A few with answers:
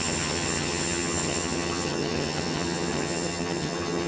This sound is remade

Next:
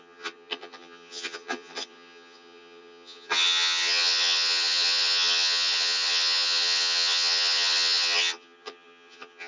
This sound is remade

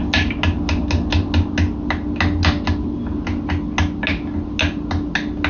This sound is recorded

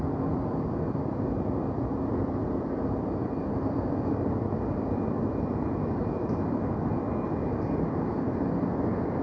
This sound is recorded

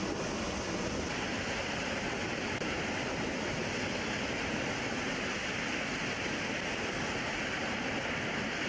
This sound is recorded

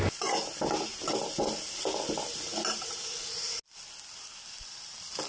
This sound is recorded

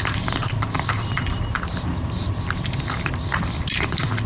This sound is recorded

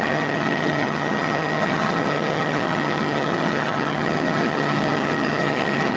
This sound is remade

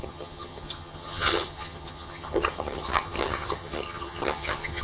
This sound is remade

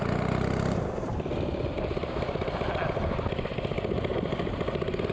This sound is recorded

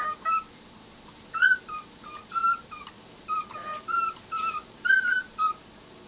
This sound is recorded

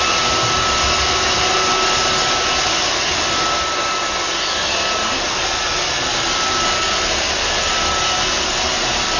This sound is recorded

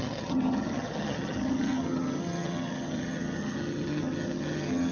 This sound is remade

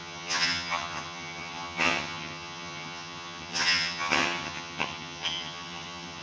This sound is remade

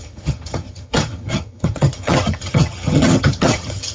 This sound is remade